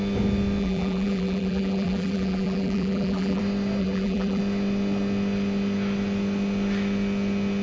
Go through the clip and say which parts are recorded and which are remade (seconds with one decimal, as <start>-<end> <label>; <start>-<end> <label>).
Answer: 0.0-0.6 recorded; 0.6-3.4 remade; 3.4-3.8 recorded; 3.8-4.4 remade; 4.4-7.6 recorded